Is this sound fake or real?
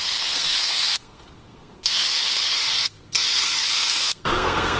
fake